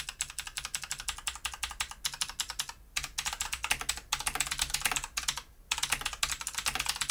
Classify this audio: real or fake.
real